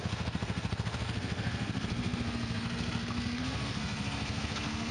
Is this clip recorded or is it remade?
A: remade